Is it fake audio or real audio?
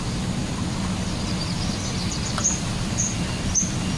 real